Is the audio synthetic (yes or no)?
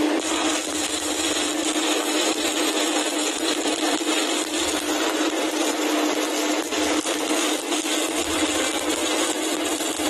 no